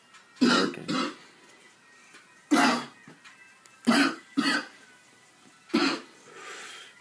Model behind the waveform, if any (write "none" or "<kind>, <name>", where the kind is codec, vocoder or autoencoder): none